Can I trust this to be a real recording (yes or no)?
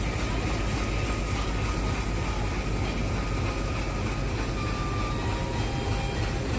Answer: yes